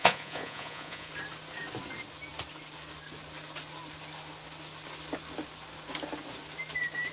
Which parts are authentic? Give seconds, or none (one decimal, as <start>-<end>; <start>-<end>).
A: 1.1-7.1